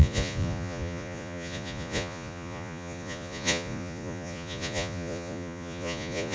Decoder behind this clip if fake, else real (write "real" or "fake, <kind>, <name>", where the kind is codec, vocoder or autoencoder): fake, vocoder, Vocos